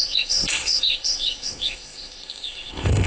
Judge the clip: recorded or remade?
remade